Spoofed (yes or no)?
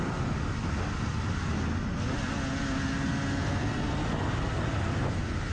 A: no